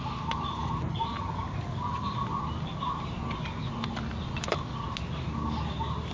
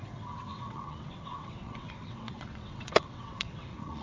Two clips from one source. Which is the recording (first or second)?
first